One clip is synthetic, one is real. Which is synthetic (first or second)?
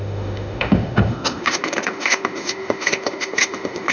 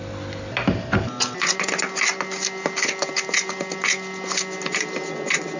first